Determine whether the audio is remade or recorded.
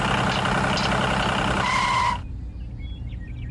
recorded